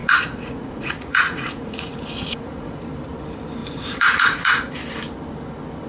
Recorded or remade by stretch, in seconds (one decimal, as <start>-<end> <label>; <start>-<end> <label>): 0.0-2.8 remade; 2.8-3.6 recorded; 3.6-4.7 remade; 4.7-5.9 recorded